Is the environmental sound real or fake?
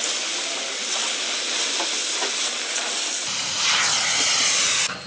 real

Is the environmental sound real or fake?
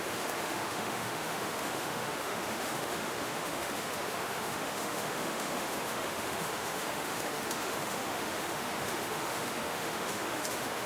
fake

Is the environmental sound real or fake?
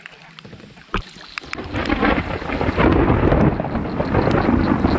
real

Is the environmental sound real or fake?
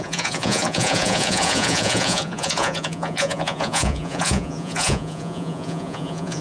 fake